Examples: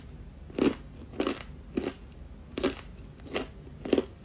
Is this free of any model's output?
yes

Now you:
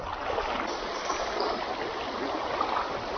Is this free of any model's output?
yes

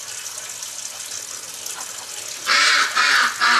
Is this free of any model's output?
yes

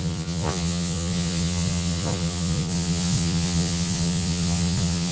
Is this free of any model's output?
no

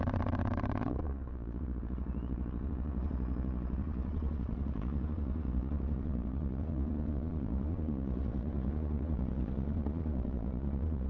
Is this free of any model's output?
no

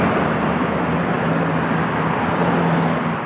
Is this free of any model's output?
yes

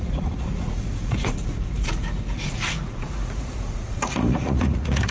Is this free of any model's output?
no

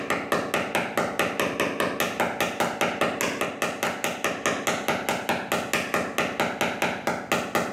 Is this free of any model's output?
yes